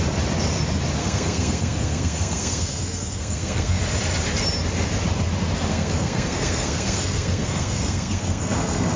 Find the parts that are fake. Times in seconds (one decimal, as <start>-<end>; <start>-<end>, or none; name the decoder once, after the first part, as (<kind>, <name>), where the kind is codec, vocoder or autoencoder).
1.0-3.8 (codec, SNAC); 5.7-9.0